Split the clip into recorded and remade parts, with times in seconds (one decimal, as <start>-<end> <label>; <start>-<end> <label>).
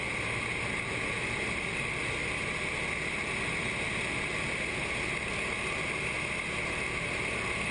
0.0-7.7 recorded